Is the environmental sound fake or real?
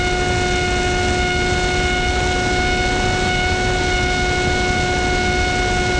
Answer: real